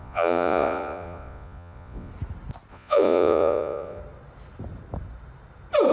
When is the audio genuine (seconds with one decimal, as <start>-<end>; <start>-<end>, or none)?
2.1-2.7; 4.0-5.9